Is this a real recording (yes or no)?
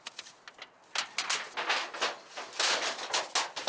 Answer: yes